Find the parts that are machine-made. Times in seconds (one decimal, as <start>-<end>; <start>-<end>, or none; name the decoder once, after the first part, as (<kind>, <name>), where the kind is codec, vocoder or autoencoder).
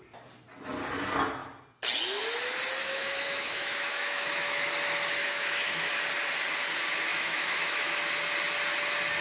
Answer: 2.8-4.7 (autoencoder, DAC-VAE); 5.2-5.9; 7.1-8.0